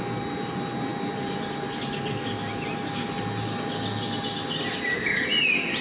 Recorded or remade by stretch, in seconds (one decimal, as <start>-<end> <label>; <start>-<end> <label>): 0.0-5.8 recorded